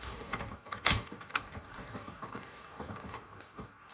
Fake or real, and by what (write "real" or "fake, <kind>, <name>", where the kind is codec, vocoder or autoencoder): fake, codec, DAC